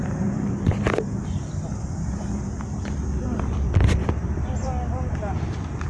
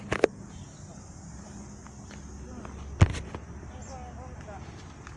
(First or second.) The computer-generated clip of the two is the first